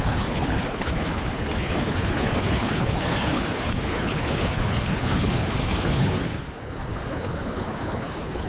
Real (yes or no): no